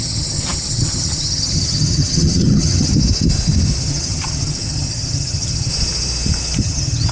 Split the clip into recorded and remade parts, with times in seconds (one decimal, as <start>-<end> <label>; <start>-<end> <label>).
0.0-2.9 remade; 2.9-3.8 recorded; 3.8-5.7 remade; 5.7-6.6 recorded; 6.6-7.1 remade